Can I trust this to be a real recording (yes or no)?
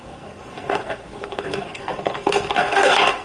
no